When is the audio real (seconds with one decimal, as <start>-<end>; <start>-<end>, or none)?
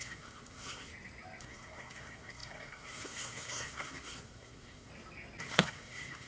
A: 0.9-1.4; 4.9-5.4